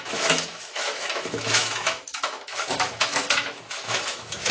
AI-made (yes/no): yes